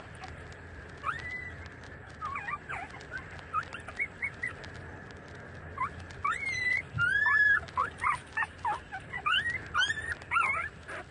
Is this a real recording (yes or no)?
yes